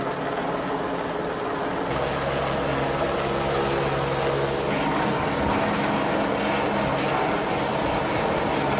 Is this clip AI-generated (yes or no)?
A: no